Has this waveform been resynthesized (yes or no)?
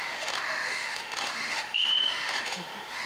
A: yes